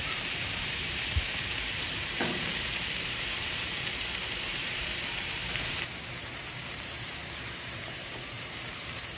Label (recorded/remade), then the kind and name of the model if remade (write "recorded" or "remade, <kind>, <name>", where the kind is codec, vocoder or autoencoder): remade, vocoder, BigVGAN v2